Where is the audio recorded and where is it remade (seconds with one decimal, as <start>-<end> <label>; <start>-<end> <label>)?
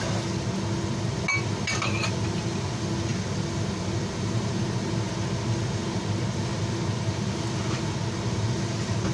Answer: 0.0-9.1 recorded